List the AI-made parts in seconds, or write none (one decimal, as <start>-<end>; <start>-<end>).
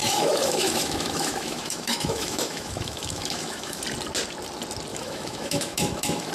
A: 0.0-3.8; 4.9-6.3